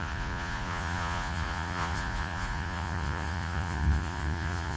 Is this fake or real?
fake